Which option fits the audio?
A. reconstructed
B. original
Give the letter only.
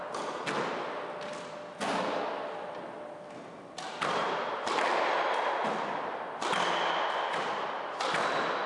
B